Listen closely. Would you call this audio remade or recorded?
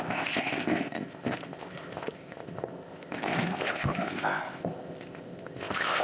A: remade